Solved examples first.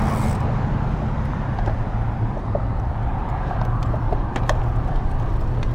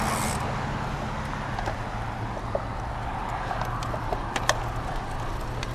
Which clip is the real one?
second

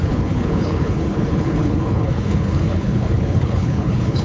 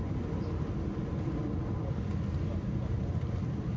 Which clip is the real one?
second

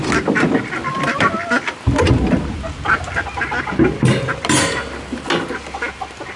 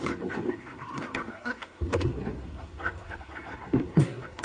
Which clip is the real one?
first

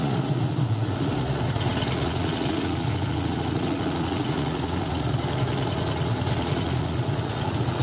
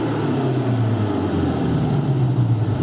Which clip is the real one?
second